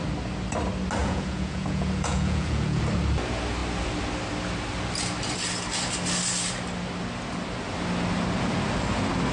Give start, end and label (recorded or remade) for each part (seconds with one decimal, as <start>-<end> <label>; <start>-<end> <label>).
0.0-1.0 recorded; 1.0-2.8 remade; 2.8-9.3 recorded